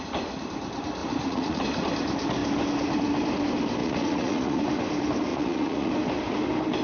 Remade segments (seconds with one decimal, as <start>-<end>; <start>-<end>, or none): 1.0-1.6; 3.8-4.6; 5.3-5.9